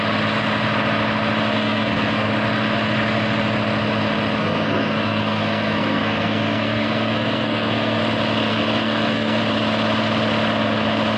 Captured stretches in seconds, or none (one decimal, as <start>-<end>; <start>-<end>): 0.0-1.6; 2.3-4.4; 8.0-8.5; 9.4-11.2